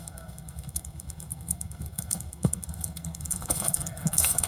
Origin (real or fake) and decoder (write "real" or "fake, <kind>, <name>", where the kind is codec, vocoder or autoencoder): fake, codec, SNAC